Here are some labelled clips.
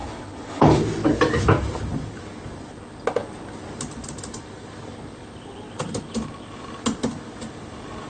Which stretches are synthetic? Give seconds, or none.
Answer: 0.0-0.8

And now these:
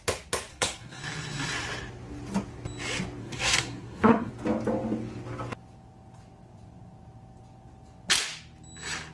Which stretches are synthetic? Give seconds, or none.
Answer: 0.5-1.0; 3.2-4.3

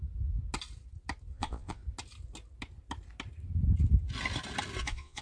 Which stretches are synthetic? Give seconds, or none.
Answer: 1.3-1.8; 4.8-5.2

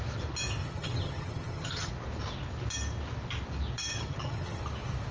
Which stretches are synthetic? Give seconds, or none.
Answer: 0.6-1.9; 3.9-4.6

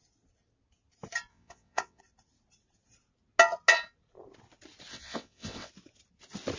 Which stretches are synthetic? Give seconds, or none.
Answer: 1.3-2.0; 4.9-5.7

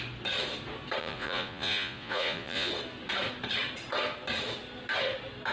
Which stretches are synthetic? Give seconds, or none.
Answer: 1.0-2.7

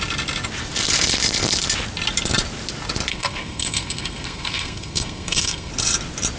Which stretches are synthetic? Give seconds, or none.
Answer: 3.1-5.7